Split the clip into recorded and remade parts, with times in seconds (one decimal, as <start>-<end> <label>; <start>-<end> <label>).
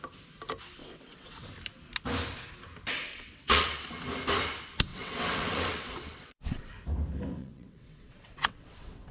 0.0-0.8 recorded; 0.8-1.5 remade; 1.5-3.1 recorded; 3.1-3.9 remade; 3.9-4.9 recorded; 4.9-6.7 remade; 6.7-7.4 recorded; 7.4-9.1 remade